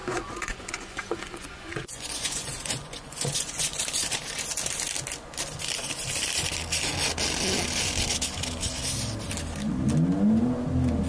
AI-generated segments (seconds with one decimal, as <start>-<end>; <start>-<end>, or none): 0.0-3.8